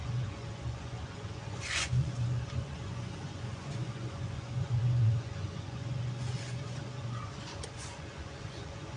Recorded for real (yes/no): no